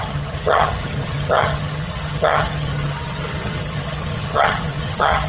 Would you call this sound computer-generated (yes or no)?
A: yes